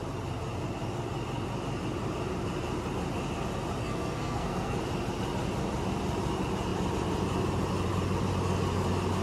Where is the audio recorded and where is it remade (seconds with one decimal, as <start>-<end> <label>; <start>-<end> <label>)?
0.0-3.8 recorded; 3.8-4.8 remade; 4.8-9.2 recorded